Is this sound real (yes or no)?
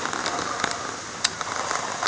yes